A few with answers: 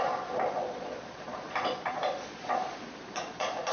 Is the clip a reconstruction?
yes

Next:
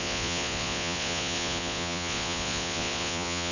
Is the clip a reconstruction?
yes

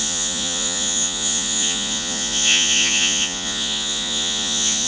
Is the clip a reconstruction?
yes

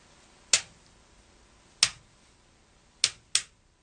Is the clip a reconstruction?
no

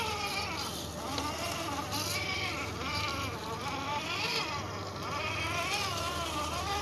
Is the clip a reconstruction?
no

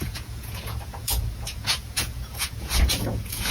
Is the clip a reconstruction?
yes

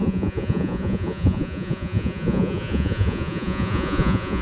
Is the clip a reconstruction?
yes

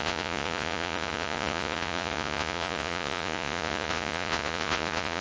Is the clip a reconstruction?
yes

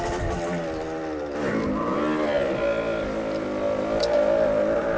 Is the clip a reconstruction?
no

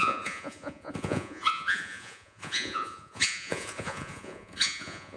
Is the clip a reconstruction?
yes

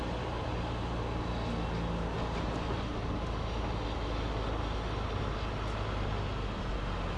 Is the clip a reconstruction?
no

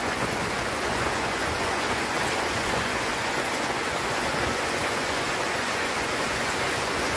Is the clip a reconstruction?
yes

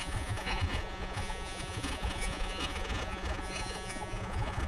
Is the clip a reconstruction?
yes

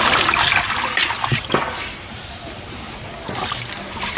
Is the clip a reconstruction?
no